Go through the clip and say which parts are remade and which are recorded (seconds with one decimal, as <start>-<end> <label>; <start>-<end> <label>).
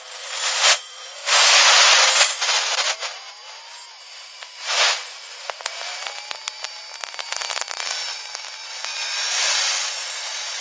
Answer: 0.0-1.2 remade; 1.2-4.0 recorded; 4.0-5.9 remade; 5.9-9.3 recorded; 9.3-10.6 remade